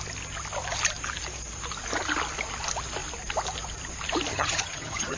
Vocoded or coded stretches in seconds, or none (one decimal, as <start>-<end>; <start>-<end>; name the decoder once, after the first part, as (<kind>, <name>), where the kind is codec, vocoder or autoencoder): 4.3-5.2 (vocoder, HiFi-GAN)